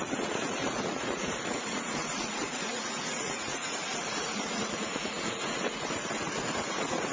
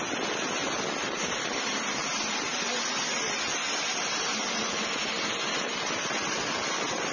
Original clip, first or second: second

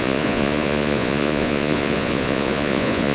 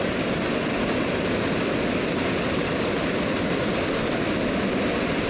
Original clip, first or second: second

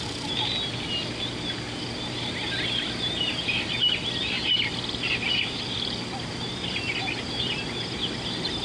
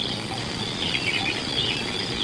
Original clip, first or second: first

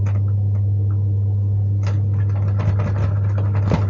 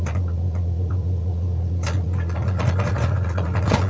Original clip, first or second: first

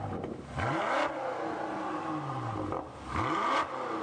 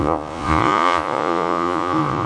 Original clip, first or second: first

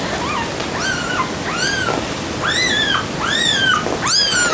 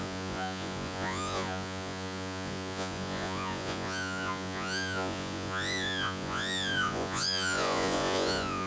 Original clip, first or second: first